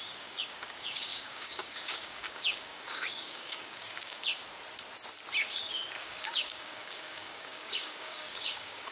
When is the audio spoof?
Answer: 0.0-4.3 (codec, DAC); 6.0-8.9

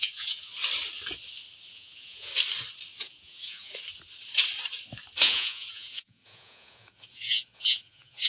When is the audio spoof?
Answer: 0.0-0.5 (vocoder, Vocos); 1.7-2.3; 3.0-3.7; 5.2-8.3

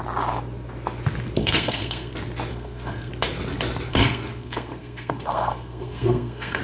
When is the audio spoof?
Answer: 1.4-2.1 (codec, SNAC); 2.5-3.1; 3.9-6.6

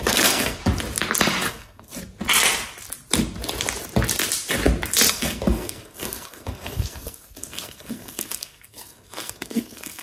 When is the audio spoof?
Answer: 0.0-0.6 (codec, SNAC); 1.5-1.9; 5.1-10.0

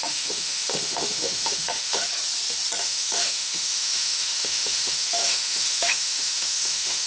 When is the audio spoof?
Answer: 0.0-2.1 (autoencoder, DAC-VAE); 2.8-7.1

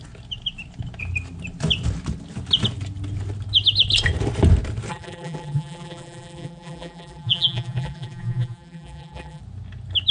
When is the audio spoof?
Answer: 4.9-9.4 (vocoder, BigVGAN v2)

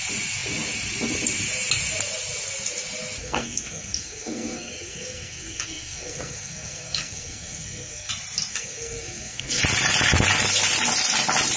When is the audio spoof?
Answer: 3.2-8.1 (codec, SNAC); 8.5-9.6

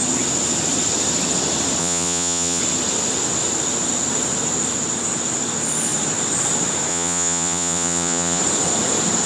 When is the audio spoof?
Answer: 1.8-2.6 (vocoder, Vocos); 6.9-8.4